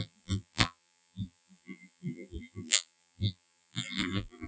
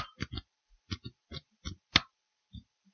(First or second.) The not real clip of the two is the first